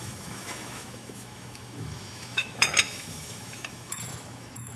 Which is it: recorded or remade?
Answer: remade